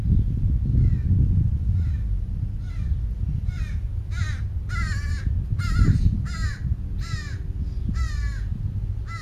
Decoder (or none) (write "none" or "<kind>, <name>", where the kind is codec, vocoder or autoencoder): none